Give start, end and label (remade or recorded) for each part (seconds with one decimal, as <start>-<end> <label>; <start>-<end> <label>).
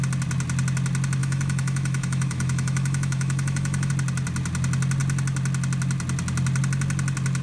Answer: 0.0-1.2 recorded; 1.2-3.9 remade; 3.9-7.4 recorded